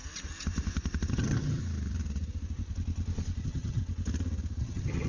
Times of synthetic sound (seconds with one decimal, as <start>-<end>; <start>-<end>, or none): 1.1-1.6; 3.4-3.8; 4.6-5.1